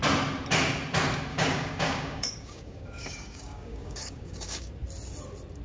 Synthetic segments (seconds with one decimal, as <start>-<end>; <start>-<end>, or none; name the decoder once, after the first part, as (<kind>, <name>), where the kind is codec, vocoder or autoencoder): 1.3-4.7 (codec, DAC)